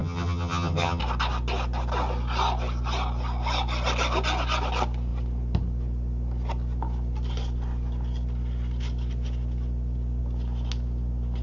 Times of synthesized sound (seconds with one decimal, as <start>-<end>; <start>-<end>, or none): 0.0-1.0